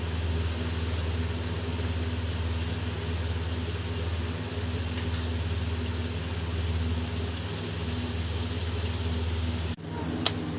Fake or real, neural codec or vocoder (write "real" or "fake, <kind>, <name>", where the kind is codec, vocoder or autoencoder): real